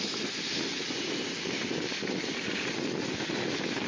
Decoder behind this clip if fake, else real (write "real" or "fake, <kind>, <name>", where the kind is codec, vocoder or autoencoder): real